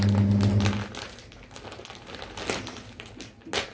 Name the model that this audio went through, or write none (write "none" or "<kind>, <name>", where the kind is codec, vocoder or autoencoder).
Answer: none